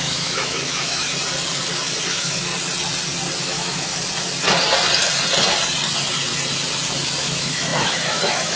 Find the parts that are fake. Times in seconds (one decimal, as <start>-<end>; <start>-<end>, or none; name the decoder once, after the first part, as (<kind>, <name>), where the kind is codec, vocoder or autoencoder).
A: 0.0-1.1 (autoencoder, DAC-VAE); 2.1-2.5; 3.4-3.9; 7.2-8.6